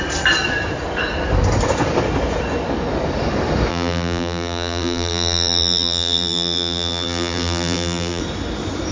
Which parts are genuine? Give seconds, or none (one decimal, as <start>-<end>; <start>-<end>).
0.0-3.7; 8.2-8.9